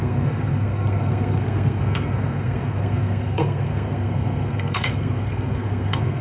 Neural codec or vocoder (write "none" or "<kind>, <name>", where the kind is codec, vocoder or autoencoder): codec, SNAC